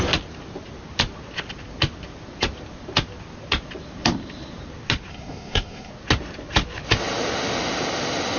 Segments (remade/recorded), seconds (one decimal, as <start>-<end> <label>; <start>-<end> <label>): 0.0-5.1 recorded; 5.1-5.9 remade; 5.9-8.4 recorded